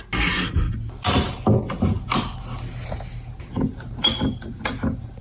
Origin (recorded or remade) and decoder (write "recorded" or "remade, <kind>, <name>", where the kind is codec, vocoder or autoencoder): recorded